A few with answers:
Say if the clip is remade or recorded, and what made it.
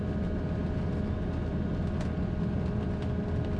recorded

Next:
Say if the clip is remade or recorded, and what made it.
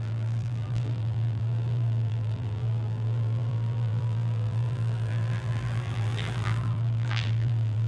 remade, vocoder, BigVGAN v2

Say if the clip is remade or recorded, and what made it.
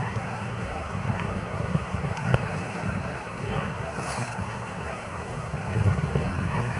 remade, codec, SNAC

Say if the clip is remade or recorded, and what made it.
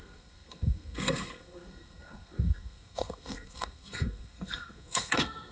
remade, codec, SNAC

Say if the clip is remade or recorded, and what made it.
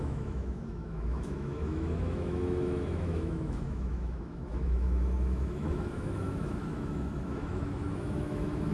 remade, autoencoder, DAC-VAE